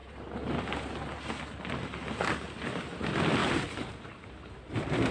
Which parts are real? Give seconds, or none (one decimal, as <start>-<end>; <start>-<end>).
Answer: 0.6-3.4; 4.3-5.1